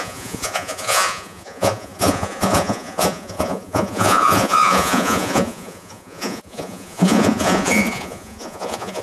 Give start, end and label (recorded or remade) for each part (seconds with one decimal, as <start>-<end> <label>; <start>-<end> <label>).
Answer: 0.0-9.0 remade